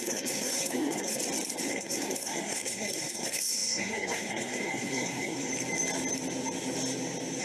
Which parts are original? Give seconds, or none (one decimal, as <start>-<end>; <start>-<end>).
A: 1.2-1.7; 5.5-7.4